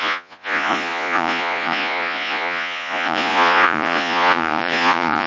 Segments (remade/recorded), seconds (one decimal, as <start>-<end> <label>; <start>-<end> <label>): 0.0-5.3 remade